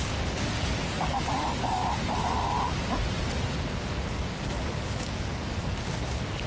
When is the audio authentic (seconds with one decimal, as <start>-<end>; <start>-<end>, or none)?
1.8-3.8